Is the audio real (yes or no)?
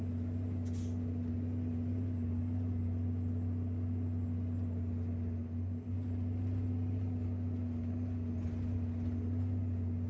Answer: yes